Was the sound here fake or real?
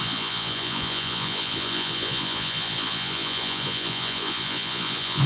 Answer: fake